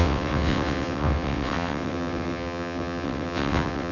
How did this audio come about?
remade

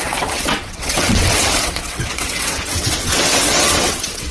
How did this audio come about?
remade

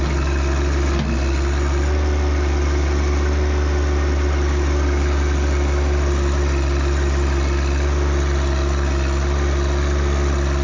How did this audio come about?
recorded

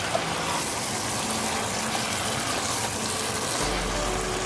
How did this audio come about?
recorded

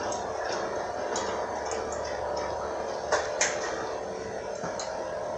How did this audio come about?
recorded